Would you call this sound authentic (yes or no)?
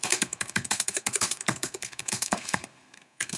no